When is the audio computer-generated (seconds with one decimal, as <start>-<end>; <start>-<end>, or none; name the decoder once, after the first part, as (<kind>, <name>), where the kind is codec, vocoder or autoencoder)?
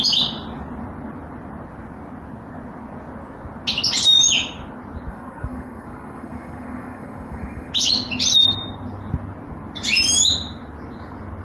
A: 5.1-7.7 (codec, SNAC)